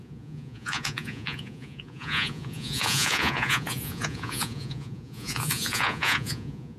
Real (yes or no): no